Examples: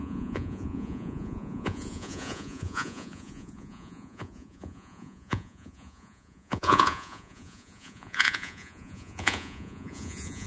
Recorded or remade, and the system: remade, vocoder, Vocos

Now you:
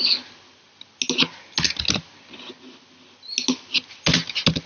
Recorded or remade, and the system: recorded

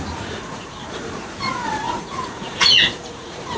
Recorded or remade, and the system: remade, vocoder, Vocos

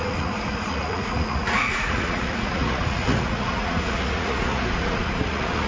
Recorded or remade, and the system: remade, vocoder, Vocos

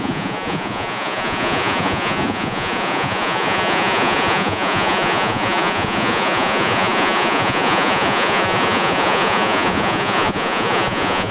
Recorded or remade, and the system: remade, vocoder, Vocos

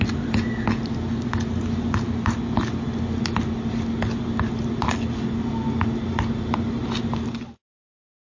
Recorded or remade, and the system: recorded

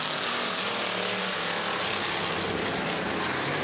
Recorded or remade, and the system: recorded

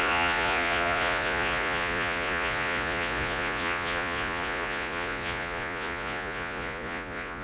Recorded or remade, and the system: remade, vocoder, Vocos